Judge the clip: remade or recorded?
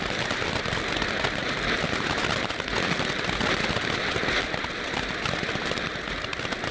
recorded